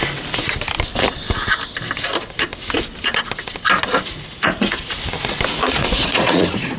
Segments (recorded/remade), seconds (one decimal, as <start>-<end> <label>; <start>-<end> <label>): 0.0-4.1 recorded; 4.1-4.9 remade; 4.9-5.5 recorded; 5.5-6.8 remade

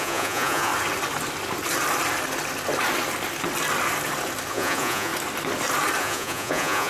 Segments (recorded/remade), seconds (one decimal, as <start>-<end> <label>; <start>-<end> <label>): 0.0-0.7 remade; 0.7-4.5 recorded; 4.5-5.1 remade; 5.1-6.0 recorded; 6.0-6.9 remade

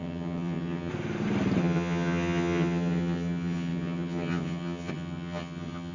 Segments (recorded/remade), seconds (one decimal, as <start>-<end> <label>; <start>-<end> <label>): 0.0-0.9 remade; 0.9-1.6 recorded; 1.6-5.9 remade

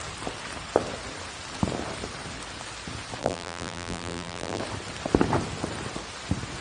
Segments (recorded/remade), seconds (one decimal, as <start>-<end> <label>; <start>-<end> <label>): 0.0-3.2 recorded; 3.2-4.6 remade; 4.6-6.6 recorded

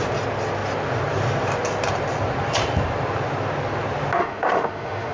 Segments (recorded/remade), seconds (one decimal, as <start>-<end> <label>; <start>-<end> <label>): 0.0-4.2 recorded; 4.2-5.1 remade